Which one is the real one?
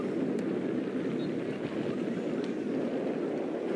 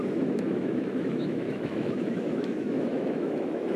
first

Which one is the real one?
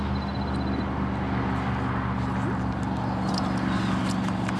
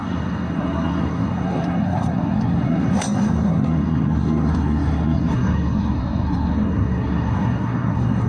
first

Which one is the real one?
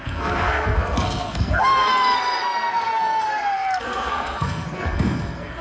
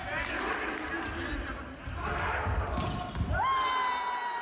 second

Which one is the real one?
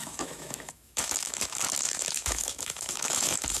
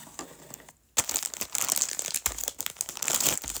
second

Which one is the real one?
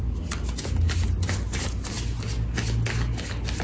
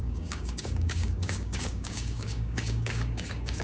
first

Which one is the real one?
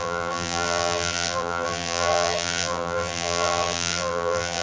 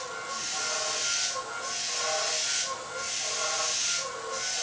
second